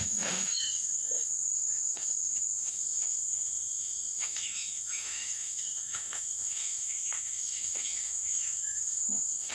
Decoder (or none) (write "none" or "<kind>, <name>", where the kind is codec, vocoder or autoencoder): autoencoder, DAC-VAE